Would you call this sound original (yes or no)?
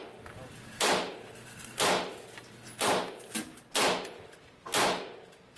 yes